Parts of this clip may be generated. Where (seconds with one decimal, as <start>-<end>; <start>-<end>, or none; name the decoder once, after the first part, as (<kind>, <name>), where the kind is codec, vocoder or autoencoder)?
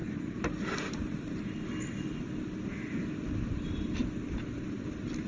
0.0-1.4 (vocoder, BigVGAN v2); 2.9-4.0